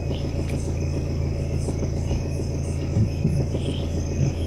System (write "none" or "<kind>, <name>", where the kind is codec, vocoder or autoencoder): codec, DAC